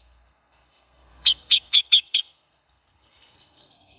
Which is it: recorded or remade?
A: remade